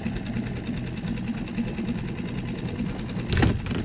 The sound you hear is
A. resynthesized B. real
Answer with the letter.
A